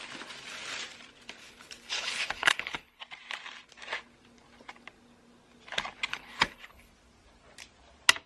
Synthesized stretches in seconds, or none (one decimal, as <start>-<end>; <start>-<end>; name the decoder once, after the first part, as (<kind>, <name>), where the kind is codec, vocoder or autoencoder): 1.4-3.0 (codec, HILCodec); 6.1-6.9